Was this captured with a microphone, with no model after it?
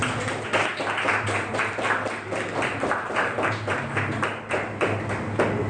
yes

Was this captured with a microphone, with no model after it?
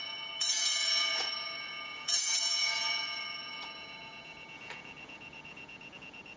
no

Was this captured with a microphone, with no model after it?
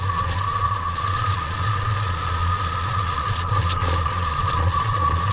no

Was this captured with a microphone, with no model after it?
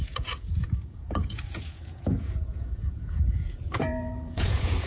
no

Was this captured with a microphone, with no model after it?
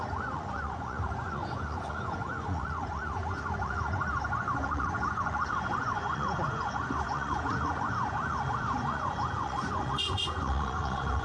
no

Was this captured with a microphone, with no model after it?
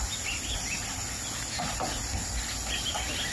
yes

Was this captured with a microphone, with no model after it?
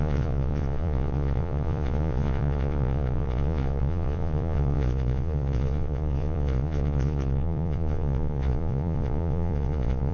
no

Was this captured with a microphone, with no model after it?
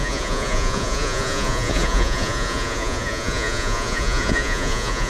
no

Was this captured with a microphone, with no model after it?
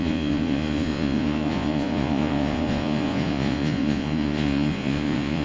no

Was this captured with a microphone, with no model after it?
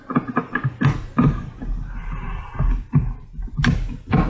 yes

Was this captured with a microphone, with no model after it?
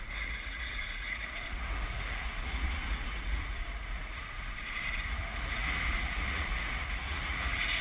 no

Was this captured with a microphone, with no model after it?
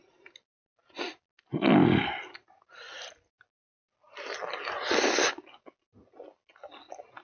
yes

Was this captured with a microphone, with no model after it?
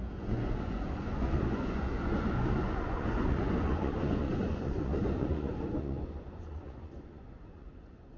no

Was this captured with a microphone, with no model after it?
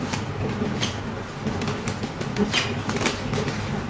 yes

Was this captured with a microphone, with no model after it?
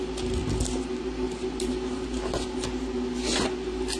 yes